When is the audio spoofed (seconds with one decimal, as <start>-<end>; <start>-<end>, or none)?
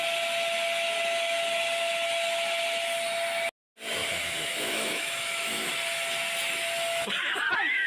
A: 4.0-5.7